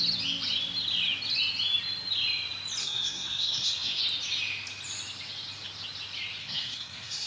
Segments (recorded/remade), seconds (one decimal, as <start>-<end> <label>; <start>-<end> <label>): 0.0-2.8 recorded; 2.8-4.0 remade; 4.0-6.4 recorded; 6.4-7.3 remade